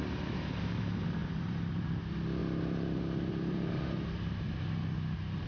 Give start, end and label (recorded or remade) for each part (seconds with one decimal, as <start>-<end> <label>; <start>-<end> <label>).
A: 0.0-1.2 recorded; 1.2-2.0 remade; 2.0-2.4 recorded; 2.4-4.5 remade; 4.5-5.5 recorded